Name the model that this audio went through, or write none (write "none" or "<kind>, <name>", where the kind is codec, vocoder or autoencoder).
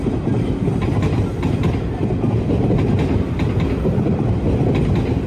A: none